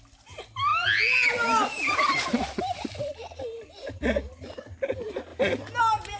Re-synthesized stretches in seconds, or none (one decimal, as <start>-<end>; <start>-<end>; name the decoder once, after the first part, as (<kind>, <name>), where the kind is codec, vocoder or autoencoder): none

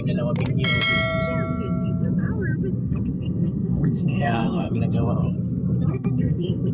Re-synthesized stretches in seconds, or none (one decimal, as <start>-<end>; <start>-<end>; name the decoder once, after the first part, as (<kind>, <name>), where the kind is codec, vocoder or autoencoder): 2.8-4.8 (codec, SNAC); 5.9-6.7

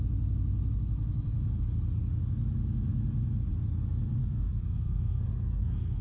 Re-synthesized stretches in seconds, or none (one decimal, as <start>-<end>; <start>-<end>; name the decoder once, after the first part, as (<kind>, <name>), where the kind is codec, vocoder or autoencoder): 4.2-6.0 (codec, SNAC)

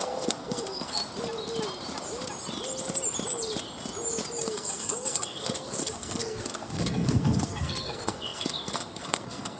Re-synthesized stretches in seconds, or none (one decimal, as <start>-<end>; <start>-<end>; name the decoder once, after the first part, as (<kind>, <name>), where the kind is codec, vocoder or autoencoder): 0.0-1.0 (codec, SNAC); 4.4-9.6

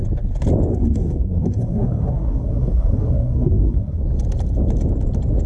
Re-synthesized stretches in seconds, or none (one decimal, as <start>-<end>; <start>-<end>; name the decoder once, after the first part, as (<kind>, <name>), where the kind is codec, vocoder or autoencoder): 0.7-4.0 (codec, SNAC)

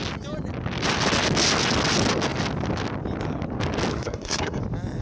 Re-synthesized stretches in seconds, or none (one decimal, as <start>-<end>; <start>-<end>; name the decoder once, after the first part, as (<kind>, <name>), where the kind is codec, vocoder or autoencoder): 3.9-4.6 (codec, SNAC)

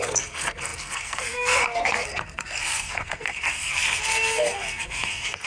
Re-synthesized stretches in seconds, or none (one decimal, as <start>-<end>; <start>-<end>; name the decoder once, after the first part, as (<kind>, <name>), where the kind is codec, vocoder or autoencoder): 0.0-5.5 (codec, SNAC)